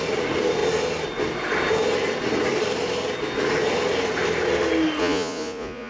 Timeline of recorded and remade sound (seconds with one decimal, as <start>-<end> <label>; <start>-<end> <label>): 0.0-5.0 recorded; 5.0-5.9 remade